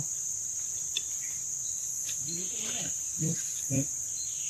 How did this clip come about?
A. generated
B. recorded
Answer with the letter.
A